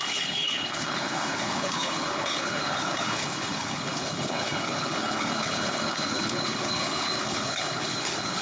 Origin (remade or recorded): remade